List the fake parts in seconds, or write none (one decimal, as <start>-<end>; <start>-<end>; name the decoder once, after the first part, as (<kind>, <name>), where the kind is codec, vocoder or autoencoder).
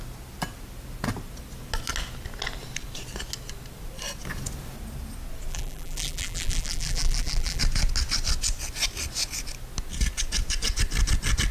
5.5-7.6 (vocoder, BigVGAN v2)